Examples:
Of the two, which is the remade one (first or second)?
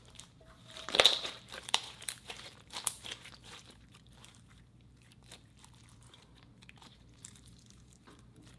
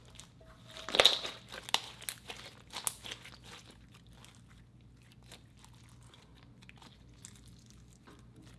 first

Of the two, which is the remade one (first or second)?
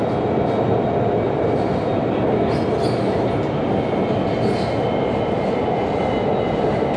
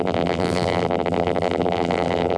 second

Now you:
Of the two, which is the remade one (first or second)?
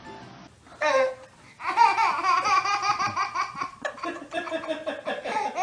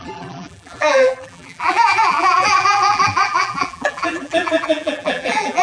second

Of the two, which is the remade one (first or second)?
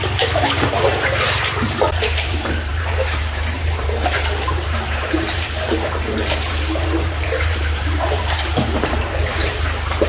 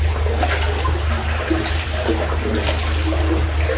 first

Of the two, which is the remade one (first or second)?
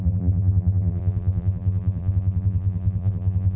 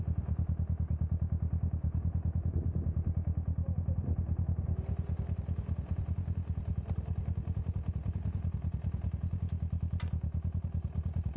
first